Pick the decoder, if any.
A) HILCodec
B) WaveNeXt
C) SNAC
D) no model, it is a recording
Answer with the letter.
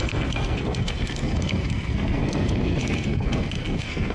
C